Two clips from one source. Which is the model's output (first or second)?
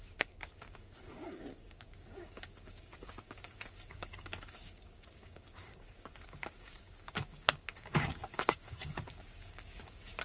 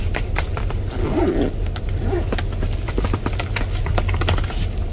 first